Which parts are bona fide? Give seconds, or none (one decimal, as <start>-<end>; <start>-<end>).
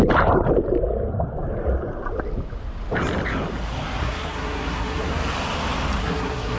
0.0-4.0; 5.1-6.0